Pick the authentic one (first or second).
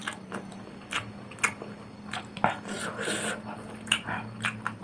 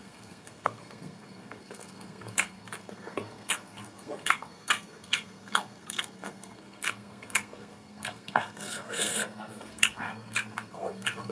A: first